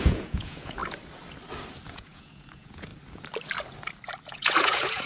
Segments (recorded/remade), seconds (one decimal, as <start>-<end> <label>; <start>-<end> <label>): 0.0-0.8 remade; 0.8-1.9 recorded; 1.9-2.9 remade; 2.9-4.2 recorded; 4.2-5.1 remade